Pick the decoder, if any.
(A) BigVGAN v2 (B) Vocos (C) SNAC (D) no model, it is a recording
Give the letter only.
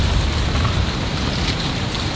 D